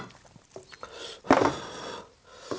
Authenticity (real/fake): real